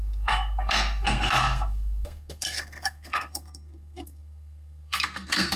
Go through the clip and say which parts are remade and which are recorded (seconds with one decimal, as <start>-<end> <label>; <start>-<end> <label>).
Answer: 0.0-5.6 remade